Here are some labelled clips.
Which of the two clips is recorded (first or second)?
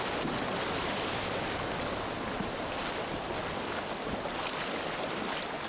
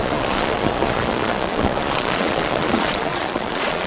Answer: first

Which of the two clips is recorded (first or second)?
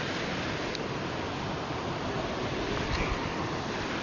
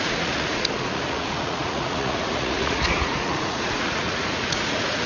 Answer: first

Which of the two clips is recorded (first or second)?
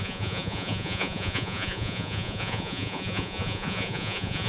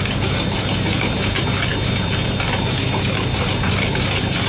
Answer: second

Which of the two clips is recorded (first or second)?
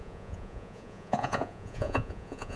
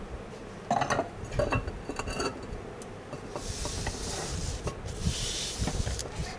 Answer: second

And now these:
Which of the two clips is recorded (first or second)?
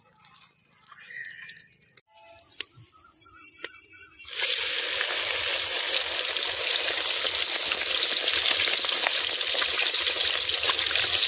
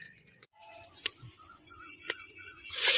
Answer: first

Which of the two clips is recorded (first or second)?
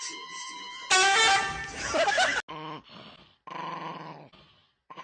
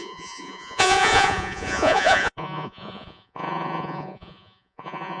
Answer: first